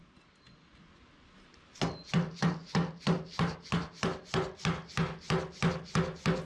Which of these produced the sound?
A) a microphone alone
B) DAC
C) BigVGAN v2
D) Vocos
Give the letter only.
A